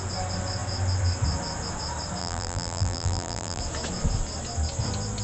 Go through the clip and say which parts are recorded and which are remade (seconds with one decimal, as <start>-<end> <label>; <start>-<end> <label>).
0.0-2.2 recorded; 2.2-3.6 remade; 3.6-5.2 recorded